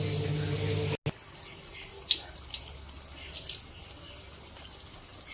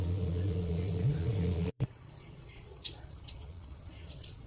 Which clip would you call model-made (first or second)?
second